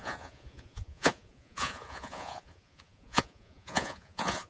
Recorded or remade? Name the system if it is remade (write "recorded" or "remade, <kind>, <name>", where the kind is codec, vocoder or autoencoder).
remade, vocoder, Vocos